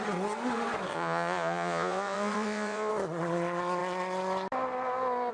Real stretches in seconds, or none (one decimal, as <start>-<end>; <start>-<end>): 0.0-0.9; 2.9-5.3